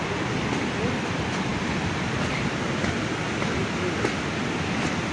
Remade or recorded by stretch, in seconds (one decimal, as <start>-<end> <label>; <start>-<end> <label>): 0.0-5.1 recorded